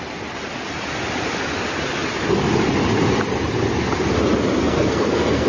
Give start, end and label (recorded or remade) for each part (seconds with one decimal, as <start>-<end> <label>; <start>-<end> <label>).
0.0-4.6 recorded; 4.6-5.5 remade